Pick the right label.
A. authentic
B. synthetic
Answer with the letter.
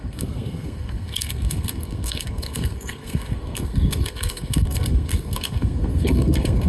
B